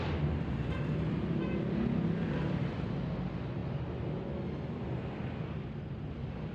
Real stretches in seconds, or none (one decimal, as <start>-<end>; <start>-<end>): 0.0-6.5